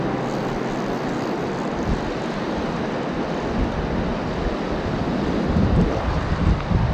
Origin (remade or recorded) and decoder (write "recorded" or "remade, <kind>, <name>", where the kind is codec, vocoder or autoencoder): recorded